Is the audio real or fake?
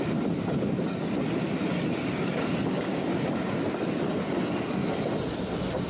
real